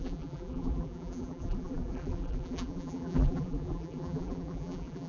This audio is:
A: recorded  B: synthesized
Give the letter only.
B